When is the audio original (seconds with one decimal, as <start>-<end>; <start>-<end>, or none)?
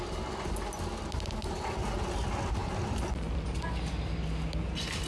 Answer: 0.0-2.6; 3.6-5.1